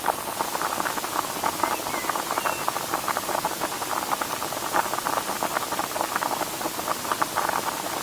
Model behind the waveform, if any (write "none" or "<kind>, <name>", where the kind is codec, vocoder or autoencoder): none